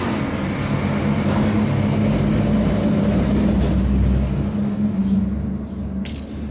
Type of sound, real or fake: real